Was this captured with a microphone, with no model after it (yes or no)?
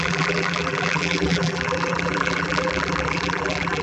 no